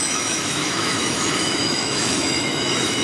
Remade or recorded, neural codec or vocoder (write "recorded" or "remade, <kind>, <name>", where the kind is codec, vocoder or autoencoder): remade, autoencoder, DAC-VAE